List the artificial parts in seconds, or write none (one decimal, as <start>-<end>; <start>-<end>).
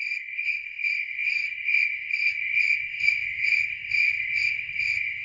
0.0-5.2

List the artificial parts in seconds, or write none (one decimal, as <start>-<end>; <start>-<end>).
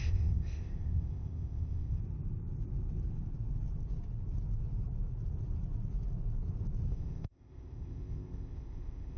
0.0-2.0; 6.9-9.2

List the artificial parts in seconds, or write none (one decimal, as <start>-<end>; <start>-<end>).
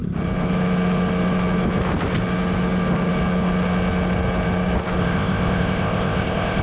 5.0-6.6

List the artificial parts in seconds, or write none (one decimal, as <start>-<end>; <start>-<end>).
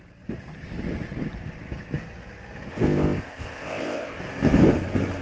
2.7-4.2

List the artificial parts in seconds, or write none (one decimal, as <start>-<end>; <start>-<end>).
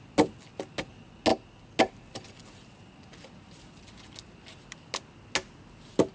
none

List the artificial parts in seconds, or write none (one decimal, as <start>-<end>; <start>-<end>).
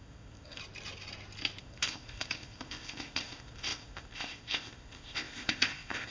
0.0-0.6; 1.6-6.1